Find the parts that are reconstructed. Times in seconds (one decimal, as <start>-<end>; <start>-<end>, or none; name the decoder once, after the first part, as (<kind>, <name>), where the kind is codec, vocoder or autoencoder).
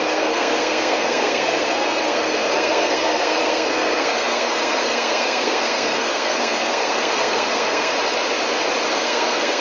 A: 0.0-7.9 (codec, SNAC); 8.9-9.6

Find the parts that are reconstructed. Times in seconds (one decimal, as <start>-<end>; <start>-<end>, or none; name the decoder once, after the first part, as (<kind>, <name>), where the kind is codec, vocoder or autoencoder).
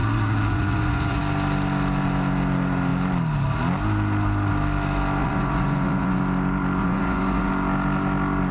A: 0.0-1.2 (vocoder, Vocos); 5.2-6.2; 6.8-7.5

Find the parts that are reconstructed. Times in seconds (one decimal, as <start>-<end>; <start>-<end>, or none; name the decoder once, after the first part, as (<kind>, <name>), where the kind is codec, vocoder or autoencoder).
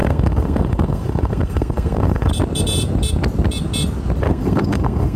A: 0.0-2.3 (codec, SNAC); 4.2-5.2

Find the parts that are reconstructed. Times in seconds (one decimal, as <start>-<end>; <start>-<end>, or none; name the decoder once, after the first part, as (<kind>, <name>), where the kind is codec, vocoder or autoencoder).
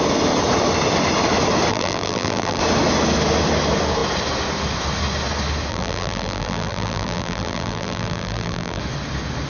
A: 1.7-2.6 (vocoder, BigVGAN v2); 5.7-8.8